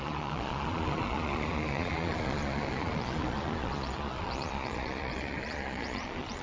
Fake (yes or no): yes